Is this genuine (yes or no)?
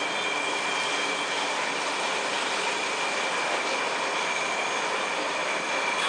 yes